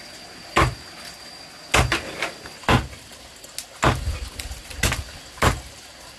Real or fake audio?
real